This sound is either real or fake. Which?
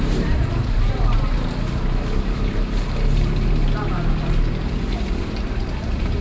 fake